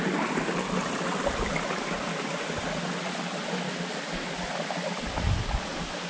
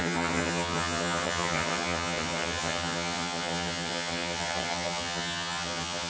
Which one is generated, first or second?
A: second